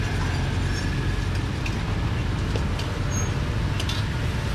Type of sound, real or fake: real